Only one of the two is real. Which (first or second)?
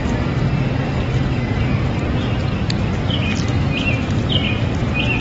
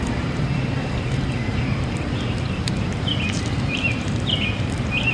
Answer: first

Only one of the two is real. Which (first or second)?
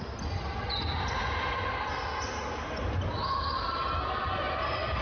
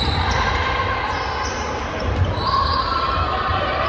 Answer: first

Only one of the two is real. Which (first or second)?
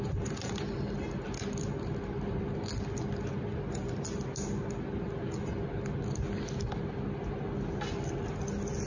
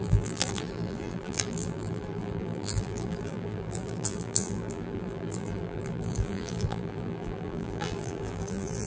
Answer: first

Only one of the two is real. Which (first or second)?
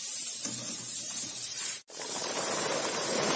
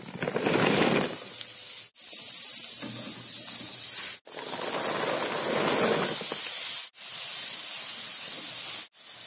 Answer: second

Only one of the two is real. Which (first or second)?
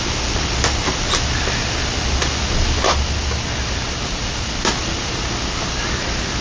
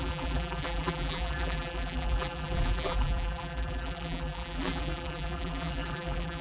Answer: first